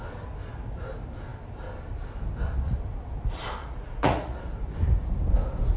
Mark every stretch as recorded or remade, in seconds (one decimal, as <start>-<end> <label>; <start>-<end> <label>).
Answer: 0.0-3.6 recorded; 3.6-4.4 remade; 4.4-5.8 recorded